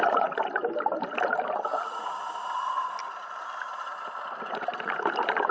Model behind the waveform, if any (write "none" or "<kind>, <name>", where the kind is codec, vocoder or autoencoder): none